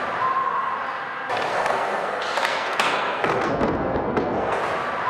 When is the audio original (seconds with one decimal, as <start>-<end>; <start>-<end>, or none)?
0.0-1.5; 4.6-5.1